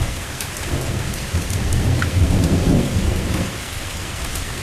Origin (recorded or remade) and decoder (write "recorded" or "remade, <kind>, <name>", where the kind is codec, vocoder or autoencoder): remade, codec, SNAC